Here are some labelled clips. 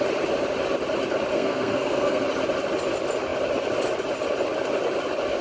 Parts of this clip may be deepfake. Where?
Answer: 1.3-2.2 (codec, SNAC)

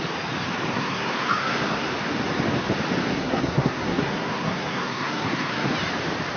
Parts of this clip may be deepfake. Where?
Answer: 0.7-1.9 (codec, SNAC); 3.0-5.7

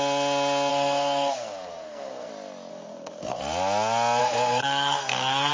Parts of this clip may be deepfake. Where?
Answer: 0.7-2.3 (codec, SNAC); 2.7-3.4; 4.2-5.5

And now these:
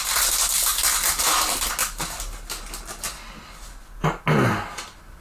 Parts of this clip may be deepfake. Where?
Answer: none

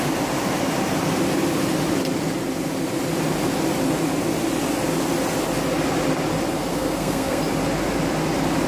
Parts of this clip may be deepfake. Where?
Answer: 6.7-7.4 (codec, SNAC)

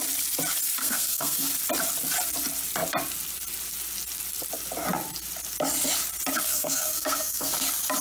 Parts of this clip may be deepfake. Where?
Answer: 0.8-1.5 (codec, SNAC); 6.4-7.5

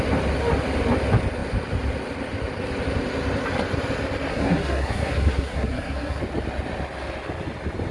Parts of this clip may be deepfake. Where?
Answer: 4.3-6.2 (codec, SNAC)